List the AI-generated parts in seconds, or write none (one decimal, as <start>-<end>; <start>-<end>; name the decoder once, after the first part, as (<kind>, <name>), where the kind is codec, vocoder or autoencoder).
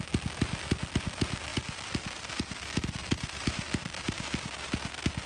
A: 1.5-4.7 (vocoder, BigVGAN v2)